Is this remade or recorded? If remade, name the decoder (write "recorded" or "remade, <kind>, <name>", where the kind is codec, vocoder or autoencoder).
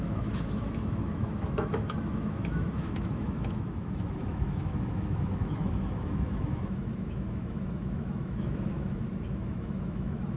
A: remade, autoencoder, DAC-VAE